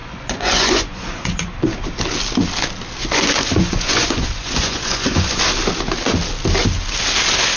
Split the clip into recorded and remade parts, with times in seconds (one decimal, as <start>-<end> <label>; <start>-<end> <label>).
0.0-1.4 remade; 1.4-3.0 recorded; 3.0-5.4 remade; 5.4-7.6 recorded